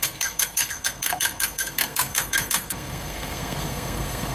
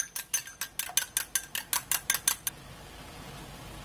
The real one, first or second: second